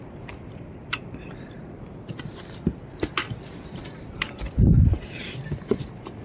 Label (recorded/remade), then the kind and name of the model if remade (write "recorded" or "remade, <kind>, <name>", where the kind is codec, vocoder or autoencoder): remade, vocoder, BigVGAN v2